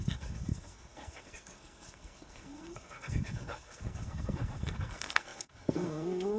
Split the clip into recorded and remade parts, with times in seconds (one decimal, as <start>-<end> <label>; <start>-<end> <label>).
0.0-6.4 remade